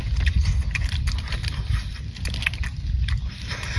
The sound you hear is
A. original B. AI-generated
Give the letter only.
B